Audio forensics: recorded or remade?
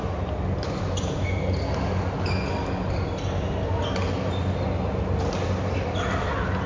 recorded